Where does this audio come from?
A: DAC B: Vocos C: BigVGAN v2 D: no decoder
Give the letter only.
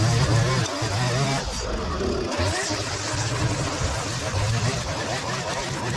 D